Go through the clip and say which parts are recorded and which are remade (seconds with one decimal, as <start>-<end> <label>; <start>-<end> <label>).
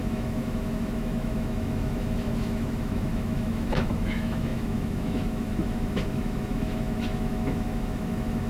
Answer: 0.0-8.5 remade